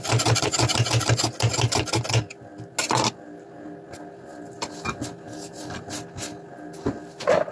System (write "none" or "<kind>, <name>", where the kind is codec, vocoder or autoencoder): none